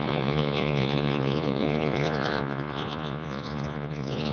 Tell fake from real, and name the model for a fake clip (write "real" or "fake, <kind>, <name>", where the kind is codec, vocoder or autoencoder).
fake, vocoder, Vocos